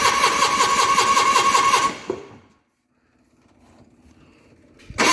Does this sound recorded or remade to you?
recorded